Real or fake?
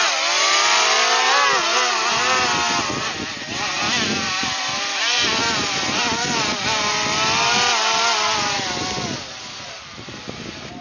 real